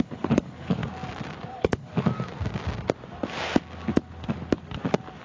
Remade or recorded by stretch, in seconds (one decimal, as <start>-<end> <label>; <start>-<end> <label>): 0.0-0.8 remade; 0.8-1.5 recorded; 1.5-1.9 remade; 1.9-5.2 recorded